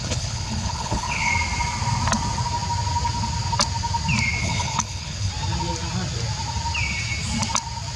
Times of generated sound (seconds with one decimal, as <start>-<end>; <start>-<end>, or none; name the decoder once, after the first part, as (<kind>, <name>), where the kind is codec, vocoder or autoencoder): 0.0-1.3 (codec, HILCodec); 4.4-5.3

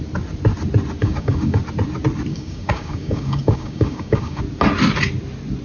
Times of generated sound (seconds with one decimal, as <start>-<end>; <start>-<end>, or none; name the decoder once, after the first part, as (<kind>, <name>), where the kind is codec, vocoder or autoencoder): 1.0-1.6 (codec, DAC); 2.3-4.4

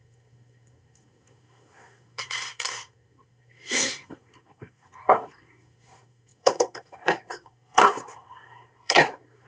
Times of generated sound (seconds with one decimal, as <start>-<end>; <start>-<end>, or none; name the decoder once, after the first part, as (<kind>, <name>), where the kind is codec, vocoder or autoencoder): 0.0-9.5 (codec, SNAC)

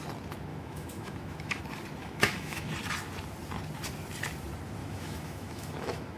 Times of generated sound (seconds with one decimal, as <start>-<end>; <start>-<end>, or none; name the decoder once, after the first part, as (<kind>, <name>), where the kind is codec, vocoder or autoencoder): 0.5-1.6 (autoencoder, DAC-VAE); 2.0-2.7; 4.8-6.2